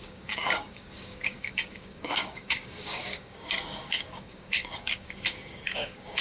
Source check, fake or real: fake